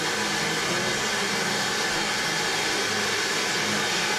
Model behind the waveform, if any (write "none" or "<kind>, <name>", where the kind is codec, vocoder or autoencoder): none